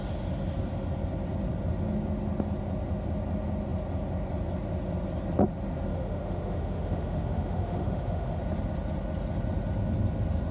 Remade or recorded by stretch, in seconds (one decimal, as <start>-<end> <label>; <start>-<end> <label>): 0.0-5.9 recorded; 5.9-8.4 remade; 8.4-10.5 recorded